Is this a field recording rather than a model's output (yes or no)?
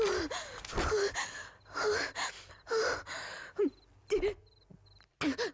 yes